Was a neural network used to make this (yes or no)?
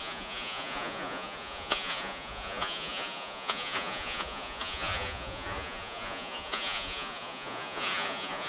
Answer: yes